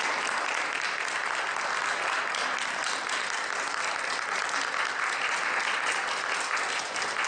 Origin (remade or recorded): recorded